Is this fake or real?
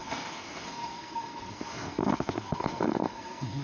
fake